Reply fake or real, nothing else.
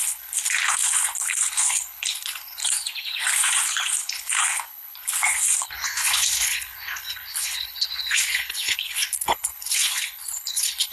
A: fake